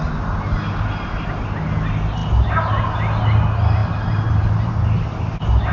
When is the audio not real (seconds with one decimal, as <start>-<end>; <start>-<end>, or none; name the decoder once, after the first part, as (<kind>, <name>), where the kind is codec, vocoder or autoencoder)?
3.8-4.7 (vocoder, BigVGAN v2)